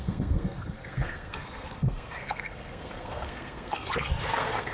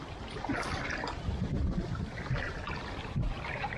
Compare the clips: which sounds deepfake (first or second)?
first